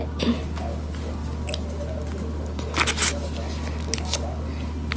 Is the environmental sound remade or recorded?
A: recorded